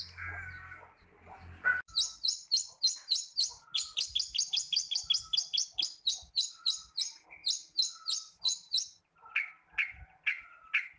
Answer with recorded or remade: recorded